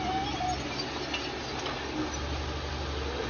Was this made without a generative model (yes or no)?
yes